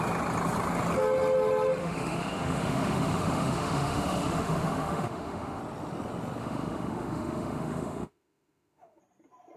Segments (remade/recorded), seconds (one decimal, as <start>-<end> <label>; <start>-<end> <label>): 0.0-1.8 recorded; 1.8-5.6 remade; 5.6-6.4 recorded; 6.4-9.0 remade; 9.0-9.6 recorded